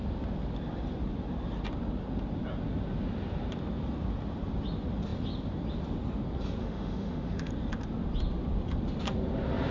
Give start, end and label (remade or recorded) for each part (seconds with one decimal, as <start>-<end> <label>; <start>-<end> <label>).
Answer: 0.0-6.6 recorded; 6.6-7.5 remade; 7.5-9.7 recorded